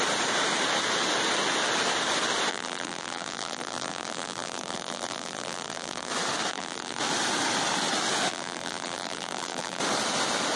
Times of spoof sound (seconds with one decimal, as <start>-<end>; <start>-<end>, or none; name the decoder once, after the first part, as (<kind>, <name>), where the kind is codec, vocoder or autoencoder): 2.5-6.1 (vocoder, BigVGAN v2); 6.5-7.0; 8.3-9.8